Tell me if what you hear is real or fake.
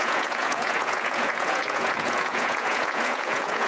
fake